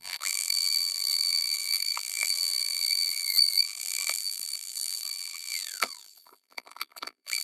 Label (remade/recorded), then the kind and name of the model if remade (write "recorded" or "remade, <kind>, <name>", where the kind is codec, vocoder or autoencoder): remade, vocoder, BigVGAN v2